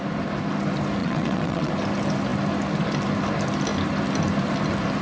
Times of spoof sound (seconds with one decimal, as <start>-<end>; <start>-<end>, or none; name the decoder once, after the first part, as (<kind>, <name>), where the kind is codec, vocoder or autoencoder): 1.0-1.7 (vocoder, WaveNeXt)